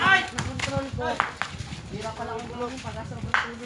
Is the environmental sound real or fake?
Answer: real